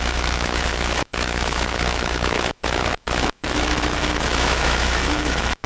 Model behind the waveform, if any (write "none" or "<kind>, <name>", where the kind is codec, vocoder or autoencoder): autoencoder, DAC-VAE